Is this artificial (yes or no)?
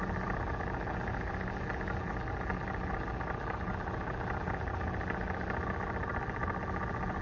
no